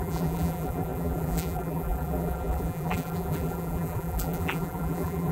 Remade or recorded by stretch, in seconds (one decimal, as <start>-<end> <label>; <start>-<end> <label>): 0.0-5.3 remade